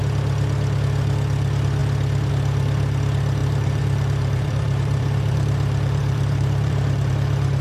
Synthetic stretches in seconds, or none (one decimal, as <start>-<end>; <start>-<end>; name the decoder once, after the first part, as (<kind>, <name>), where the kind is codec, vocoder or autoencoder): 3.4-7.1 (vocoder, BigVGAN v2)